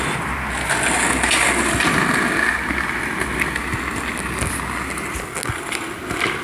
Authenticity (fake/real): real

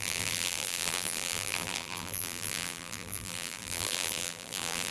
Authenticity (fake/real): fake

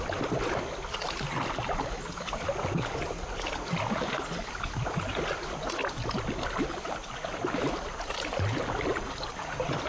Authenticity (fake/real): real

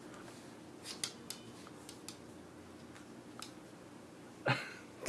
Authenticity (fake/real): real